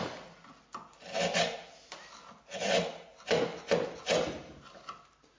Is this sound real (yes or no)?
yes